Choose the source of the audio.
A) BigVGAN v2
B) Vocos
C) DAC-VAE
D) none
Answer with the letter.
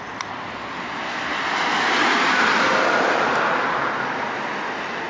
D